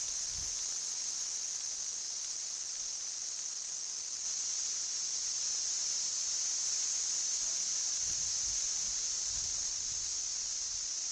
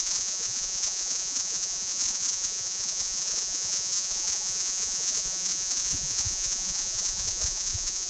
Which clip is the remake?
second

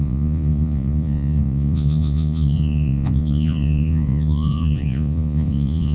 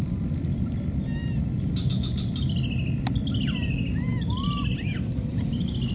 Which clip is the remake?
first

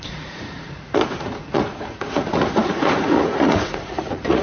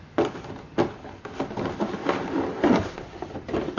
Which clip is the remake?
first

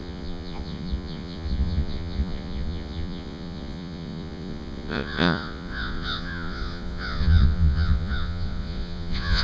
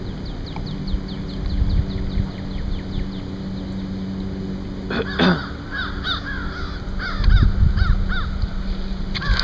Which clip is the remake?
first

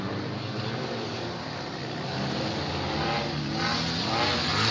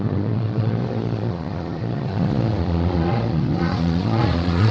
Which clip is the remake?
second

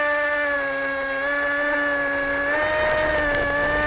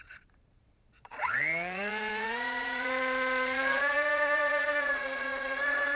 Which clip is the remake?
second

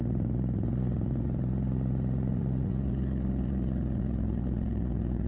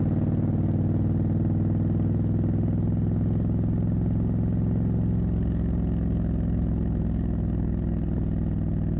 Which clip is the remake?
first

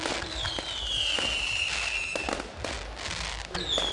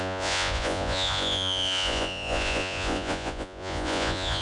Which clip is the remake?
second